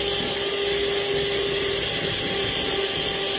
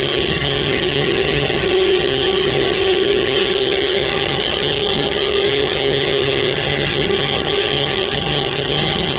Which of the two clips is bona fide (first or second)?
first